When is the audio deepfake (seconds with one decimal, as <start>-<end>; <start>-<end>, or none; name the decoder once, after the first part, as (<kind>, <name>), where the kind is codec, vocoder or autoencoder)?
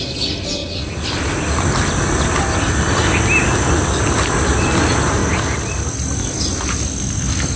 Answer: none